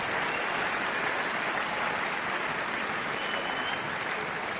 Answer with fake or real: real